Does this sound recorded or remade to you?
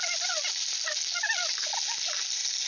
recorded